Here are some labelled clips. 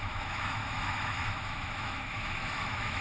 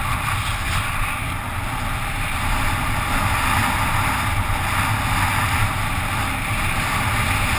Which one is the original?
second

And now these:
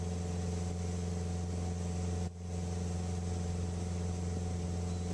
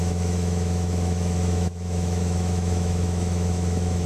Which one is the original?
first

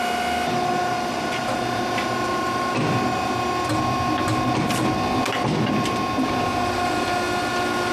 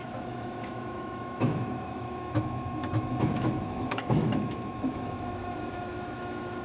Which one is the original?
first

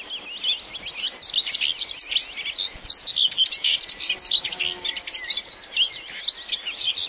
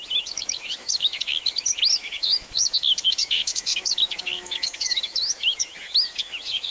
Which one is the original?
first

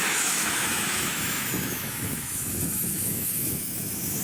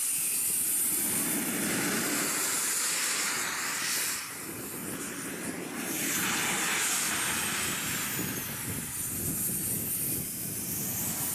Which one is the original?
second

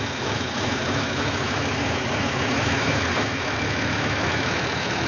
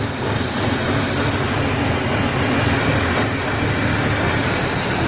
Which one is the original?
second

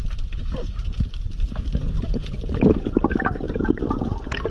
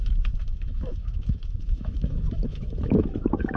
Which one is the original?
first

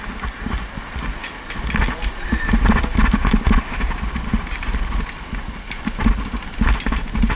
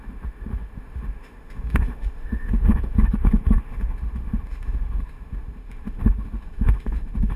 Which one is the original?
first